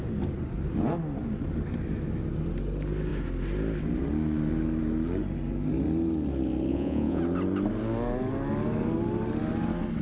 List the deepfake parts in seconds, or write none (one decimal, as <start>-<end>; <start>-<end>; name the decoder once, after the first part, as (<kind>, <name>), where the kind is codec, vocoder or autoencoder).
6.7-7.2 (vocoder, Vocos)